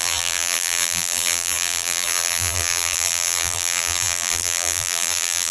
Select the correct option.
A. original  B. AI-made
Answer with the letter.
B